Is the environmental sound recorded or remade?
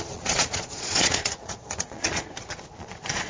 remade